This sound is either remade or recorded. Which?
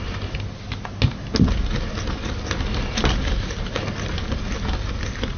recorded